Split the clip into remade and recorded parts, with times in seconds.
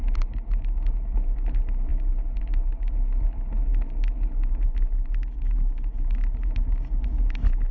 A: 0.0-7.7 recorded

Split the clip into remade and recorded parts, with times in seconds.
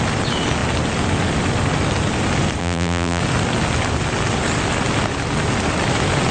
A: 0.0-2.6 recorded; 2.6-3.2 remade; 3.2-6.3 recorded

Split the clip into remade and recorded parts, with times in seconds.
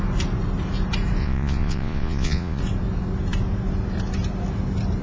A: 0.0-1.2 recorded; 1.2-2.6 remade; 2.6-5.0 recorded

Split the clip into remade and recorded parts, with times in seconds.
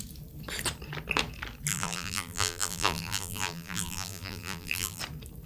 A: 0.0-1.7 recorded; 1.7-5.0 remade; 5.0-5.5 recorded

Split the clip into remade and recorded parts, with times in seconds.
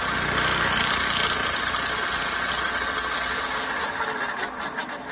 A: 0.0-1.4 recorded; 1.4-2.2 remade; 2.2-3.8 recorded; 3.8-4.4 remade; 4.4-5.1 recorded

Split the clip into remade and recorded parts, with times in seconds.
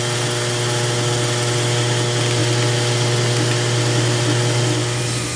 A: 0.0-5.4 recorded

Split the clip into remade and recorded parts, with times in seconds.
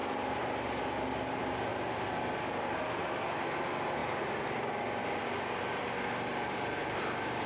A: 0.0-1.7 recorded; 1.7-2.9 remade; 2.9-4.0 recorded; 4.0-5.2 remade; 5.2-7.5 recorded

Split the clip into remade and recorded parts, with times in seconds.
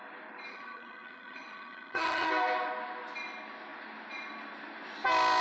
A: 0.0-0.5 recorded; 0.5-2.3 remade; 2.3-5.4 recorded